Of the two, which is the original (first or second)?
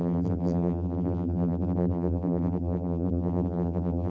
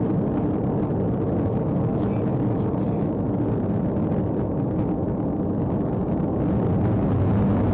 second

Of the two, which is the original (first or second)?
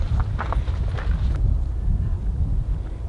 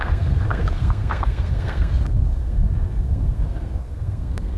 first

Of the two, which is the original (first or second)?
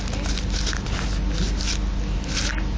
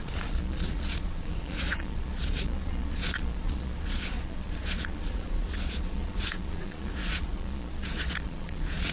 first